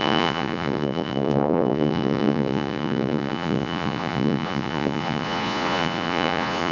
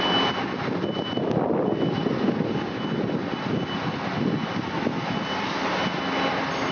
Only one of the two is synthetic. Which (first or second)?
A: first